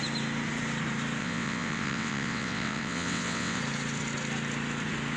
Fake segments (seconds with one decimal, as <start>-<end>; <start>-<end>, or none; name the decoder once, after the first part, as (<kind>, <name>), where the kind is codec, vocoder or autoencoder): 1.2-3.6 (vocoder, WaveNeXt)